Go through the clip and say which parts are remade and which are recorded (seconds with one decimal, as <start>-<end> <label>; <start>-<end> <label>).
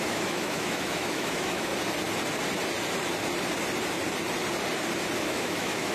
0.0-1.7 remade; 1.7-5.2 recorded; 5.2-5.9 remade